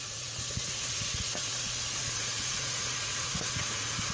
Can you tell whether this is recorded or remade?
remade